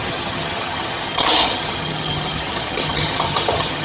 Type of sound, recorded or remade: remade